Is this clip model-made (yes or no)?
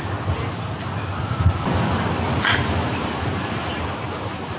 no